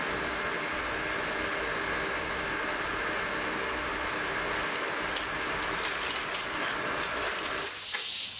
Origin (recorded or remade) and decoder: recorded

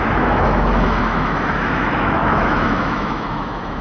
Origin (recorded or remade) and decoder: remade, autoencoder, DAC-VAE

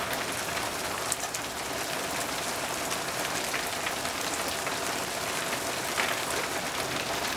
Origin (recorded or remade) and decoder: recorded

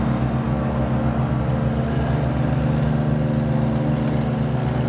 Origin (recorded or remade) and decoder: recorded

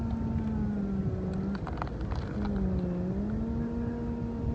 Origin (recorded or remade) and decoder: recorded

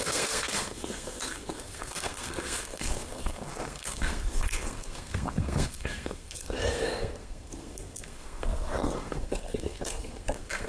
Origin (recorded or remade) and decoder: remade, codec, SNAC